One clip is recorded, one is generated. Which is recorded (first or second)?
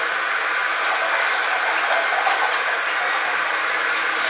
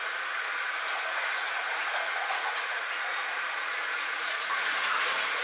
first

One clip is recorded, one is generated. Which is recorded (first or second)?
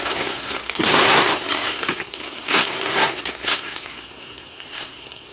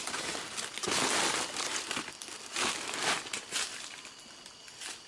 second